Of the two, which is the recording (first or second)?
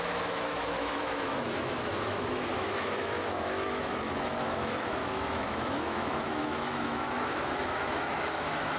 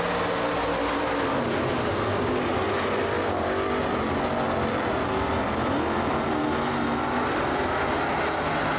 second